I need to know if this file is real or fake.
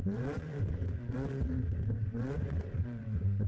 fake